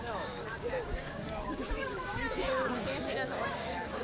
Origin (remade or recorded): remade